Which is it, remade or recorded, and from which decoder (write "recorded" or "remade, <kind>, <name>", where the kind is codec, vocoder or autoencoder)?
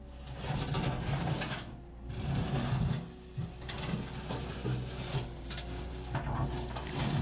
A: recorded